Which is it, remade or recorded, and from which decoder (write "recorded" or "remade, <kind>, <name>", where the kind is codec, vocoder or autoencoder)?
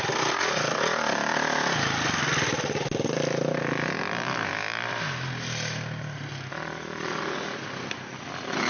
recorded